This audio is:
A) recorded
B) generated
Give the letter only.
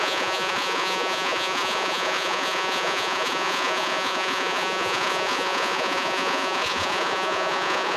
B